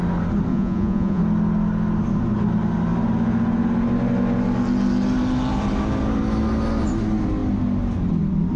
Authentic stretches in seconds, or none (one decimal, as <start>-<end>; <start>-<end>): 0.0-0.5; 1.2-8.6